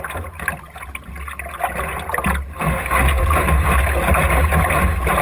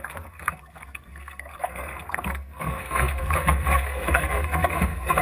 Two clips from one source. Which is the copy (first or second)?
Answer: second